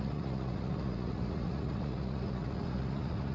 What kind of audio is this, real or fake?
fake